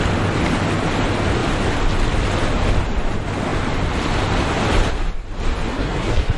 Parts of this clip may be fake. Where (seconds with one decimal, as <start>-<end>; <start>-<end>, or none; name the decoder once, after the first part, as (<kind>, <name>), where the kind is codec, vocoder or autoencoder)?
5.7-6.4 (codec, SNAC)